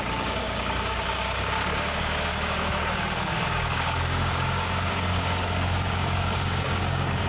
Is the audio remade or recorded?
remade